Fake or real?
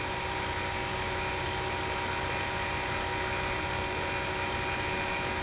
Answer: real